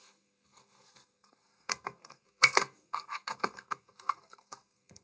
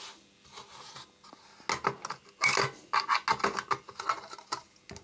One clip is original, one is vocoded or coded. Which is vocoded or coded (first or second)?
first